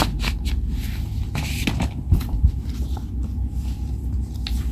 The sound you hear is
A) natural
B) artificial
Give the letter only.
A